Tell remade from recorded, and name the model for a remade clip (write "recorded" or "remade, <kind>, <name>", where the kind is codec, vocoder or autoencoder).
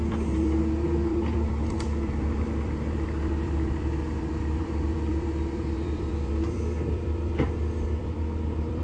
remade, vocoder, BigVGAN v2